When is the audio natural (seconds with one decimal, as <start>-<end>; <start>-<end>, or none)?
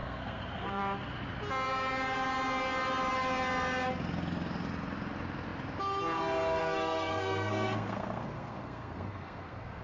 0.8-6.6